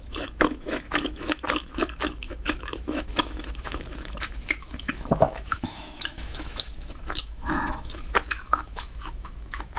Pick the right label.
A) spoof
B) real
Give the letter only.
A